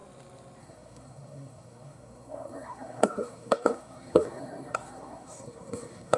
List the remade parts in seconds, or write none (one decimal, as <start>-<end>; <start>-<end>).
0.6-6.2